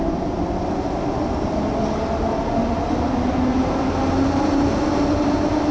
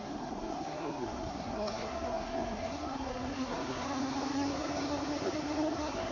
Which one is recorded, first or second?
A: first